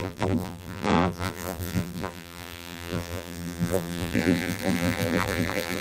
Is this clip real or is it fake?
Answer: fake